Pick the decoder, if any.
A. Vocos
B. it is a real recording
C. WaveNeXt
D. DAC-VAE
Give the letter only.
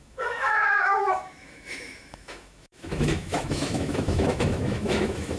D